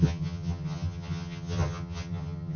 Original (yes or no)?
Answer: no